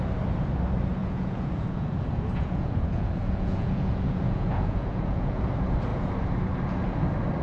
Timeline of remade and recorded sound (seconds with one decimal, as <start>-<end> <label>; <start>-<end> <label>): 0.0-1.0 recorded; 1.0-5.4 remade; 5.4-7.4 recorded